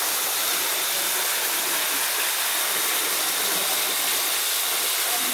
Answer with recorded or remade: recorded